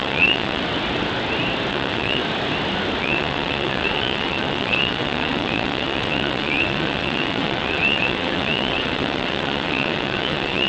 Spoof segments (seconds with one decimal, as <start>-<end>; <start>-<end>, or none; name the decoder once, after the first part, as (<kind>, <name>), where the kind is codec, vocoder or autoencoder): 0.0-0.6 (vocoder, WaveNeXt); 1.7-2.2; 3.0-10.7